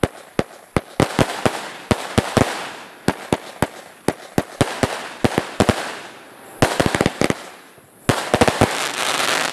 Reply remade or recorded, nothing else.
recorded